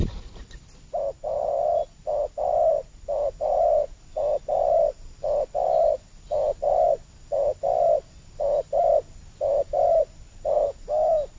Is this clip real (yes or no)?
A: yes